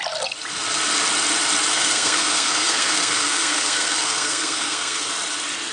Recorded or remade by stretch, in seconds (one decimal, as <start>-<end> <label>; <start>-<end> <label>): 0.0-1.7 recorded; 1.7-5.1 remade; 5.1-5.7 recorded

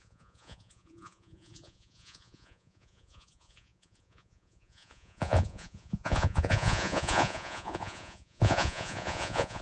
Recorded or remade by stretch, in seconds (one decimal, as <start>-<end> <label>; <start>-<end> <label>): 0.0-9.6 remade